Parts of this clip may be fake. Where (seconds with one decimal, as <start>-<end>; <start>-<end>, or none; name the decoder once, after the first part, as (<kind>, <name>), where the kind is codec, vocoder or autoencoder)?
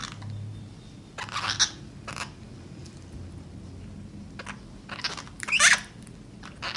none